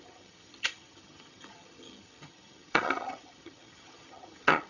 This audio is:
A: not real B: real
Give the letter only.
A